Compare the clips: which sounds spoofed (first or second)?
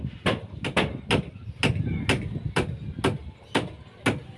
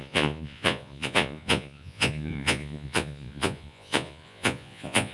second